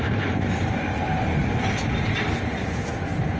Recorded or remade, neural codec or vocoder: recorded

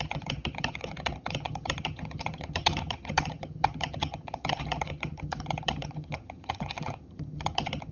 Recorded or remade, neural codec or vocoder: remade, vocoder, HiFi-GAN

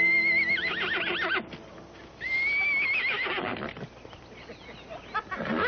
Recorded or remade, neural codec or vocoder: recorded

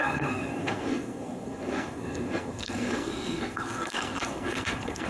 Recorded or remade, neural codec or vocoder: remade, codec, SNAC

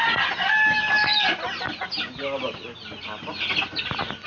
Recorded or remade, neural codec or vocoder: recorded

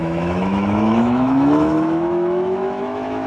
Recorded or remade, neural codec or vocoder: remade, autoencoder, DAC-VAE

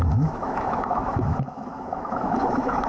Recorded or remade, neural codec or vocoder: remade, autoencoder, DAC-VAE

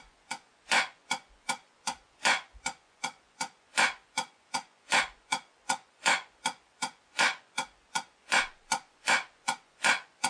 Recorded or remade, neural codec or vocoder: remade, vocoder, Vocos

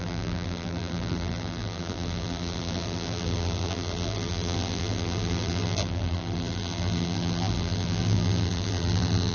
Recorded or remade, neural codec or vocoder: remade, vocoder, BigVGAN v2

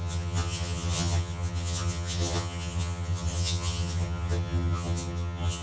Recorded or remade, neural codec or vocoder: remade, vocoder, HiFi-GAN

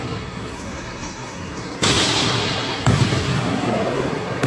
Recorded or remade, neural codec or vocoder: remade, codec, SNAC